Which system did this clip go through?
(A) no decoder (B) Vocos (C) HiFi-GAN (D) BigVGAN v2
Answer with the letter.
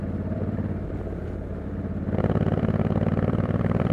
D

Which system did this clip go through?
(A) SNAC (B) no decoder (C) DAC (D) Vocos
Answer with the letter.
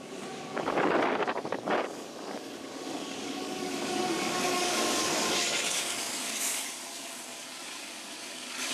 C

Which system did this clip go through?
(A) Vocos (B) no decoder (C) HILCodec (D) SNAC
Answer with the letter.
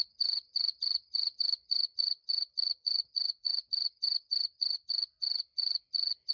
A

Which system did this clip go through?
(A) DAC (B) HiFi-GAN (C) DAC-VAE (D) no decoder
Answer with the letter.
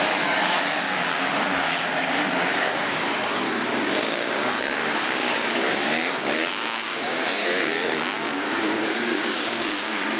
A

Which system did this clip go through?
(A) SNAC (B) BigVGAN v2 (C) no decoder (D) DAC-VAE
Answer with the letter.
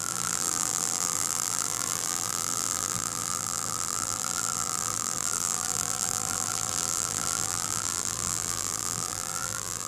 B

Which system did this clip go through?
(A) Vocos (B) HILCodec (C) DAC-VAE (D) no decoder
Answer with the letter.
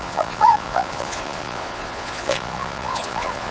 A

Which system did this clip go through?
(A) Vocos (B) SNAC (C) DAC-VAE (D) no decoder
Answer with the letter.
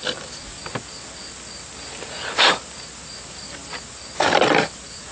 D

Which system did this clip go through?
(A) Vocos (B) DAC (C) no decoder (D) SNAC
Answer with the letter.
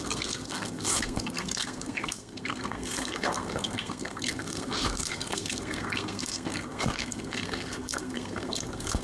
D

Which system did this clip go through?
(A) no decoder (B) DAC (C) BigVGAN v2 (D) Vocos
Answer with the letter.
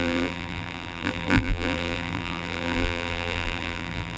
C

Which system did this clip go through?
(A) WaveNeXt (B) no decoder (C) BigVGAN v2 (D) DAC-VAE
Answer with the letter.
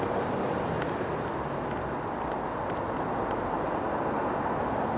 B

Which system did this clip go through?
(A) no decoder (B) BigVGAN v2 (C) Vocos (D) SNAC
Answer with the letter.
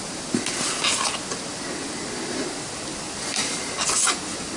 A